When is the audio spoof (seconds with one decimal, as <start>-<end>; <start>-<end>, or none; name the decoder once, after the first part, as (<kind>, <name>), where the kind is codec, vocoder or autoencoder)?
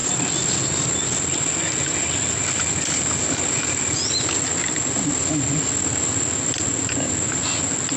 none